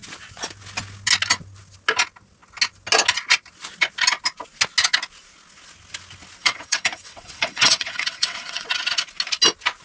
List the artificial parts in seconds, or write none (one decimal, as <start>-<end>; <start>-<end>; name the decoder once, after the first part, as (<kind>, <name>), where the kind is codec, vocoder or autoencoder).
6.4-8.7 (vocoder, WaveNeXt)